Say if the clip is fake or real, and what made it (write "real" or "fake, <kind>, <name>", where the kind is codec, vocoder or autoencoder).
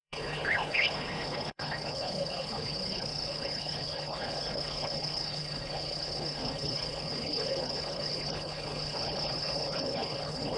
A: fake, codec, HILCodec